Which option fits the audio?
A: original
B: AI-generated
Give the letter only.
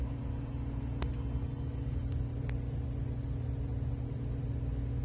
A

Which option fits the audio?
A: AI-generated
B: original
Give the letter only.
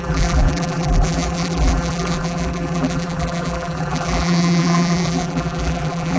A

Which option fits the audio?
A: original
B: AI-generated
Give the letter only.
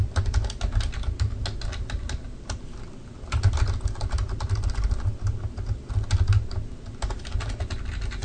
A